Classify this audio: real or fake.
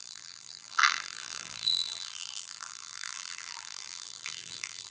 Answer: fake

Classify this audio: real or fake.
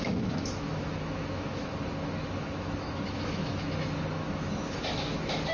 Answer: fake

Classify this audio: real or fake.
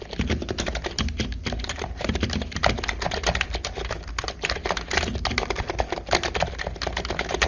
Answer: real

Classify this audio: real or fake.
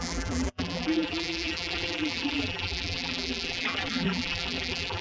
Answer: fake